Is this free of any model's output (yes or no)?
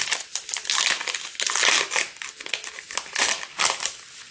yes